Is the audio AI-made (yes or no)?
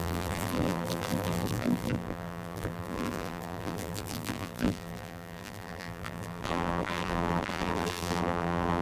yes